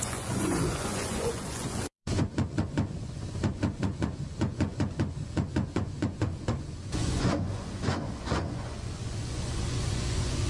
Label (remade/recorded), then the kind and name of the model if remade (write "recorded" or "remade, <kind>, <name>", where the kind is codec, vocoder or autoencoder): remade, vocoder, Vocos